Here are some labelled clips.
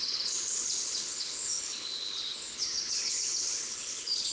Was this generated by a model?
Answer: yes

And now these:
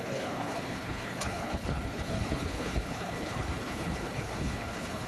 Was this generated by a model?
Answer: yes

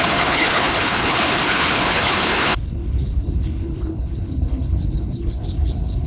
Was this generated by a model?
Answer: yes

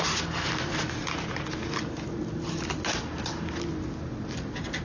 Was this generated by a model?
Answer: no